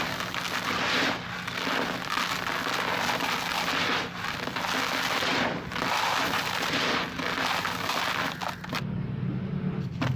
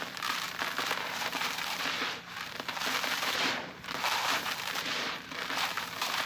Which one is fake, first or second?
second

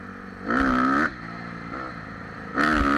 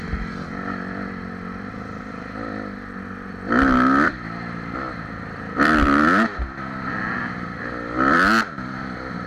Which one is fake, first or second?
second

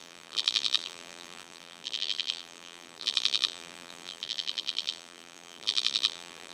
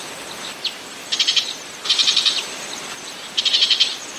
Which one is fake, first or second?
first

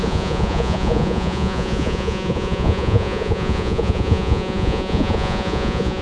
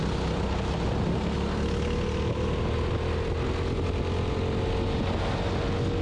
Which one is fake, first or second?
first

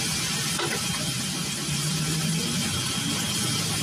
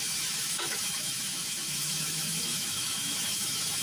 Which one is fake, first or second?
second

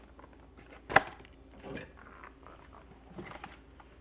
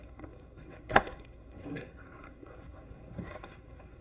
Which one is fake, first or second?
second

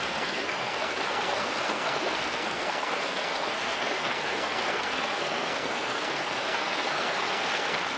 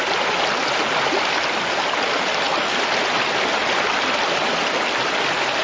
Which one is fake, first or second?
first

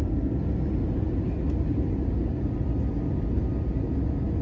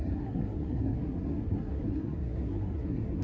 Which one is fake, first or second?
second